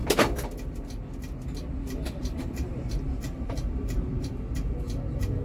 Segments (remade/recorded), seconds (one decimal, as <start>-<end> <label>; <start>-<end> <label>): 0.0-2.2 recorded; 2.2-4.3 remade; 4.3-5.4 recorded